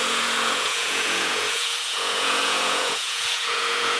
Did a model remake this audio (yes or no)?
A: yes